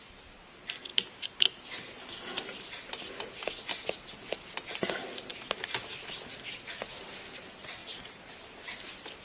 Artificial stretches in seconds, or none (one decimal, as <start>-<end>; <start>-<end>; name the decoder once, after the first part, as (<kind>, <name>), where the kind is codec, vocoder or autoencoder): none